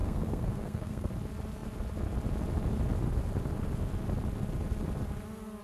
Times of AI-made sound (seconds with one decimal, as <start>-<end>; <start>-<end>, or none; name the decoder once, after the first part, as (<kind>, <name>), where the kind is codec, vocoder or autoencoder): 0.0-1.1 (codec, SNAC)